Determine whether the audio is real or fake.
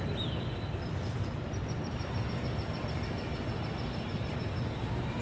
real